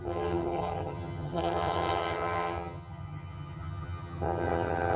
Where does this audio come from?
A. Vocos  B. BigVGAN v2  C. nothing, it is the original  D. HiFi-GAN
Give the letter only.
D